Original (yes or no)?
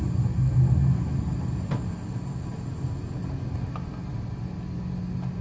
yes